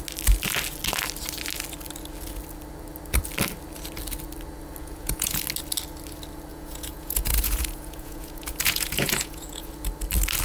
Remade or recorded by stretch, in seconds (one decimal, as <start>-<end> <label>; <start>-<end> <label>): 0.0-4.8 recorded; 4.8-5.4 remade; 5.4-6.5 recorded; 6.5-9.7 remade; 9.7-10.4 recorded